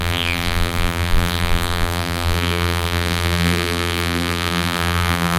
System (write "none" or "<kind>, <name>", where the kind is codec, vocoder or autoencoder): vocoder, BigVGAN v2